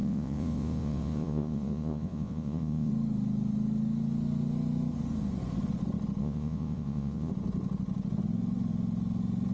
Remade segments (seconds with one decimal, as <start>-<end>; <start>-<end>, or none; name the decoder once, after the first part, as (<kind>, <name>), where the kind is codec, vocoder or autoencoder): 0.0-2.9 (vocoder, Vocos); 6.2-7.3